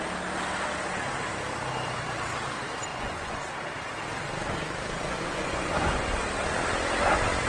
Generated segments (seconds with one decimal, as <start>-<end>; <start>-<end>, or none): 2.9-3.4; 5.0-6.2